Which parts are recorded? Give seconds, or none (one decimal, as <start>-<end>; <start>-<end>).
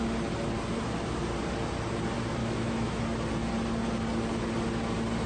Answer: 0.0-2.4; 3.0-5.3